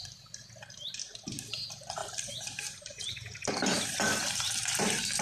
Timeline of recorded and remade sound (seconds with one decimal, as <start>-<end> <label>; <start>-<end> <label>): 0.0-2.0 recorded; 2.0-5.2 remade